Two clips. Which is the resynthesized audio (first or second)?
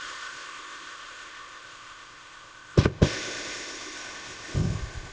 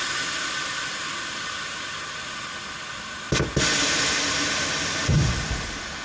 first